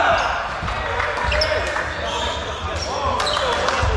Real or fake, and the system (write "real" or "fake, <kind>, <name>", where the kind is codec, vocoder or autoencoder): real